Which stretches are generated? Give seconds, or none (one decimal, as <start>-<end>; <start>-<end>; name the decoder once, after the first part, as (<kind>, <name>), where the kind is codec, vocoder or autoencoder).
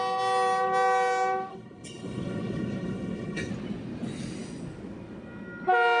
1.5-3.5 (codec, HILCodec)